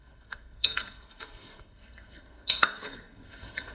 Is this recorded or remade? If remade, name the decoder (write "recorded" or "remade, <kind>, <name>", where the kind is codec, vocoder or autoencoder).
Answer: remade, codec, SNAC